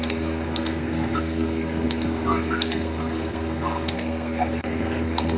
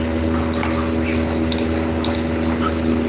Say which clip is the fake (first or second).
first